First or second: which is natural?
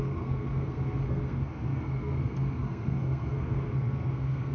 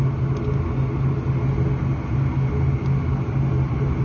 second